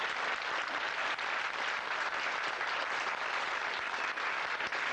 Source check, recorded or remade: recorded